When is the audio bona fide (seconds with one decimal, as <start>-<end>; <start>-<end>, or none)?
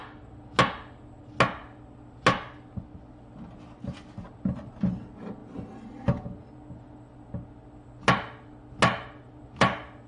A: 0.0-10.1